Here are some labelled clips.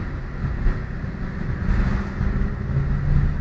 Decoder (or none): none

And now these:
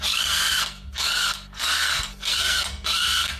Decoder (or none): codec, SNAC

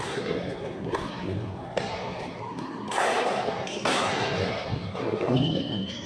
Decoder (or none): codec, SNAC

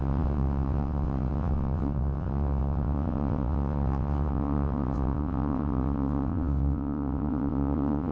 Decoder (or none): vocoder, WaveNeXt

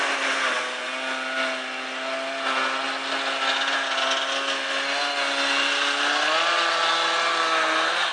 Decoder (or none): none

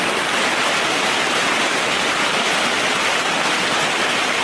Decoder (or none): none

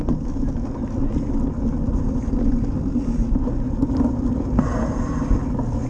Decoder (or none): none